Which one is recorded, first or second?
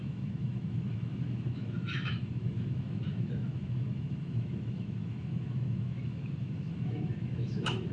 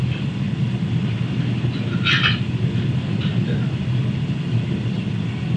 second